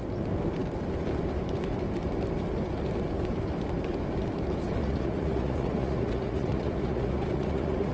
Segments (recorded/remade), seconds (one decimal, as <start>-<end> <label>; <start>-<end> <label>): 0.0-4.8 recorded; 4.8-7.9 remade